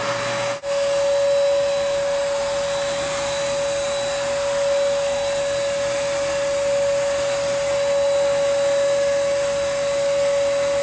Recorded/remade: recorded